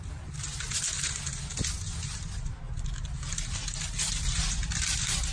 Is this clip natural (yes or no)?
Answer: yes